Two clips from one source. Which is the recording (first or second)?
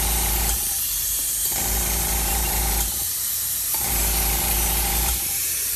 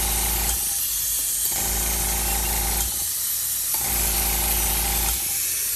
second